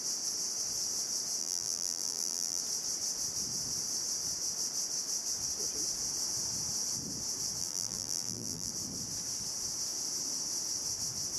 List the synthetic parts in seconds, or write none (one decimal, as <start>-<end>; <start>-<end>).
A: 1.4-2.6; 7.6-8.7